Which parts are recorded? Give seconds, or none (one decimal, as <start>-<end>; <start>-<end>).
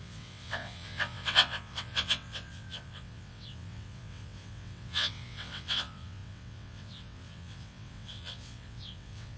none